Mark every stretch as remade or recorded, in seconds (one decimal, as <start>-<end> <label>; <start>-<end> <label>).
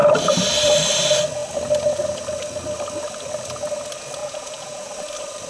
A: 0.0-4.2 recorded; 4.2-4.9 remade; 4.9-5.5 recorded